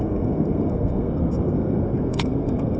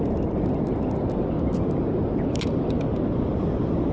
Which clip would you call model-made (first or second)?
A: first